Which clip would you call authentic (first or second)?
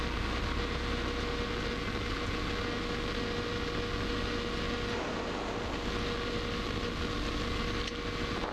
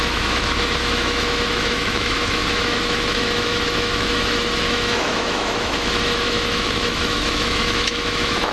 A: first